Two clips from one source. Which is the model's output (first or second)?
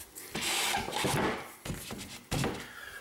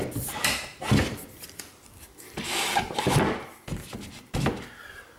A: second